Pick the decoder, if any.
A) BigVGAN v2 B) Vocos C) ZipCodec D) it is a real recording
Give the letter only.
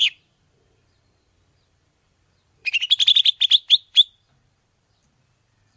A